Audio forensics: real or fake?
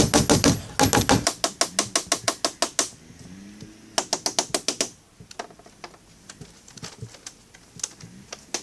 real